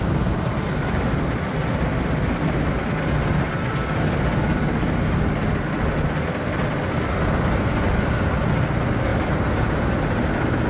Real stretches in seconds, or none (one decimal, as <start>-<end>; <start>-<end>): 0.0-10.7